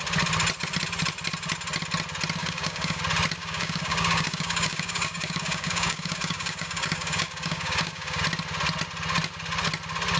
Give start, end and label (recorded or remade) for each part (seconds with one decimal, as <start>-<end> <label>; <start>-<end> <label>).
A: 0.0-2.4 recorded; 2.4-3.0 remade; 3.0-3.4 recorded; 3.4-8.2 remade; 8.2-10.2 recorded